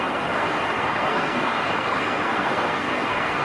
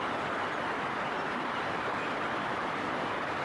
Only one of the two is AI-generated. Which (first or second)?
first